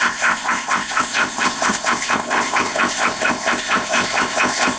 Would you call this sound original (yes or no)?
no